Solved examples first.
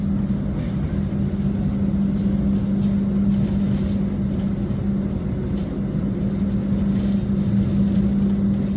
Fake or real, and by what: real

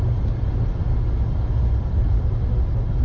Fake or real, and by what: real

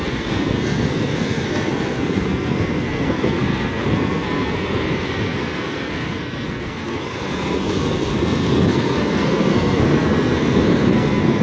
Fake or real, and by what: fake, codec, SNAC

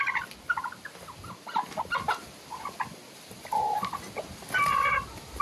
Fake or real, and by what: real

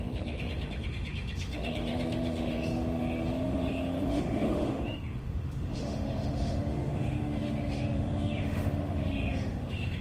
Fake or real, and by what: fake, autoencoder, DAC-VAE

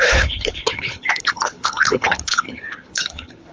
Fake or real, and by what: fake, codec, HILCodec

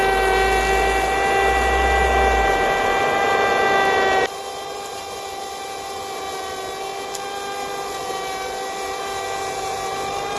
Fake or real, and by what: real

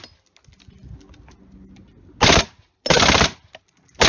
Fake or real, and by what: real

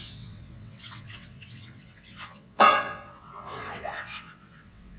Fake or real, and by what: fake, vocoder, WaveNeXt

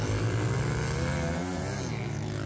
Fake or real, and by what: real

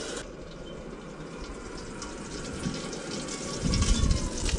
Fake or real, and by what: real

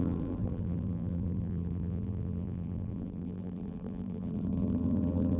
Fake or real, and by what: fake, vocoder, BigVGAN v2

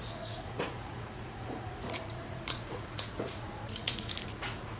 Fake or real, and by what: fake, vocoder, Vocos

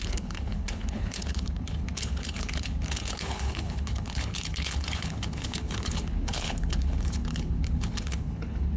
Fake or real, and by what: fake, codec, HILCodec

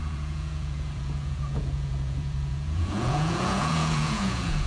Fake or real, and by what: fake, vocoder, Vocos